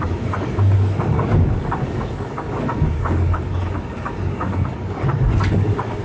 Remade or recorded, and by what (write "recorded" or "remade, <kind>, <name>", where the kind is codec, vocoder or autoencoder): remade, codec, DAC